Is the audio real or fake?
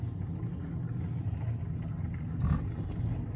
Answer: real